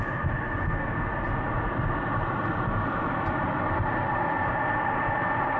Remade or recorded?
recorded